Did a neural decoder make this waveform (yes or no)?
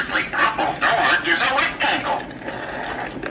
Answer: no